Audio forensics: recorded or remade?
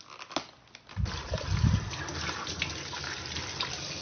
recorded